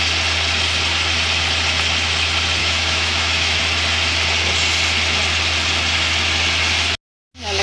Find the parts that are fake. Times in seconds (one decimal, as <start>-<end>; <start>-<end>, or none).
2.6-3.6